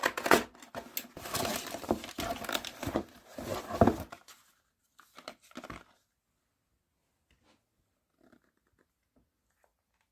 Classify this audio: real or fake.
real